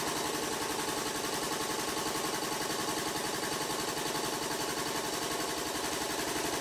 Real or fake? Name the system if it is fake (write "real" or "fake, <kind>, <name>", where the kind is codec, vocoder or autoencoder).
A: real